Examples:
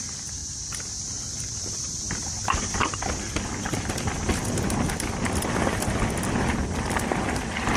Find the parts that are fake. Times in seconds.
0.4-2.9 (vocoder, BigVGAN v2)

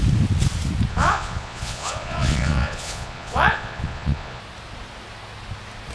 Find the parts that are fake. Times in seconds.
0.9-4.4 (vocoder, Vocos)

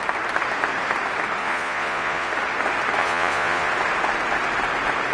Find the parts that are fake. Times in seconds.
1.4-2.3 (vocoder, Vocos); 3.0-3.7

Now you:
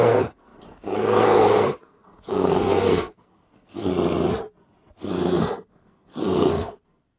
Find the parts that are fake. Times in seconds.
0.0-3.9 (codec, SNAC); 5.0-7.2

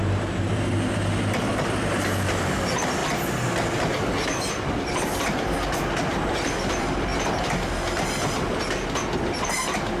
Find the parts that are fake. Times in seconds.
0.0-3.0 (vocoder, BigVGAN v2); 4.5-7.1; 9.1-10.0